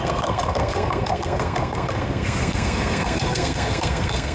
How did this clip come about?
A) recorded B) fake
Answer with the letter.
B